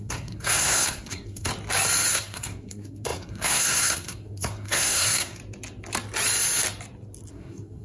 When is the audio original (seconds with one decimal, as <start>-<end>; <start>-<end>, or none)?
1.5-2.1; 5.4-7.3